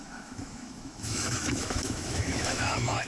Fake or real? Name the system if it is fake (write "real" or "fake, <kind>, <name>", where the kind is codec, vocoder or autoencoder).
fake, autoencoder, DAC-VAE